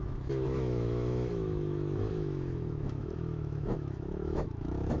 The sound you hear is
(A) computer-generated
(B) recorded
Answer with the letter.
A